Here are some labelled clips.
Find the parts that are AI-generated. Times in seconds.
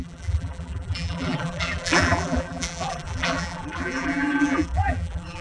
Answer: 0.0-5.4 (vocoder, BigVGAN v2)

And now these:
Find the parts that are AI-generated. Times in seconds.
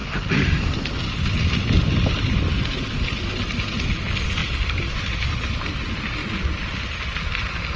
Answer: 0.0-2.5 (vocoder, BigVGAN v2); 4.4-5.3; 6.2-6.7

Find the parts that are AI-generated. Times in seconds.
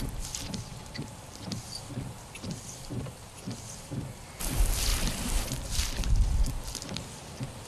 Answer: 0.0-4.9 (vocoder, BigVGAN v2); 6.5-7.7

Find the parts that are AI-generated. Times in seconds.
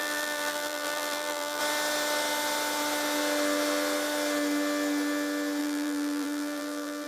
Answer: 0.0-1.6 (vocoder, BigVGAN v2); 5.6-7.1